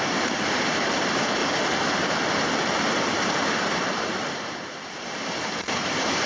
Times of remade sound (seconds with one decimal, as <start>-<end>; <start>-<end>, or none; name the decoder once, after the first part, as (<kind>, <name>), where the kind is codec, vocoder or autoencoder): 0.0-1.4 (vocoder, BigVGAN v2); 2.6-6.3